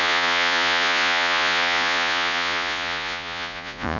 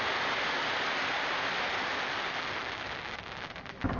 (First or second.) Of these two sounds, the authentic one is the second